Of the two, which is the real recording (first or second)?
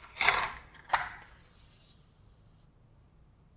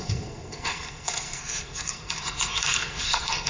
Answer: first